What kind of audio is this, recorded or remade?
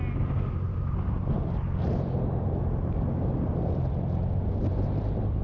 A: recorded